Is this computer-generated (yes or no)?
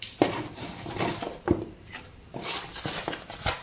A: yes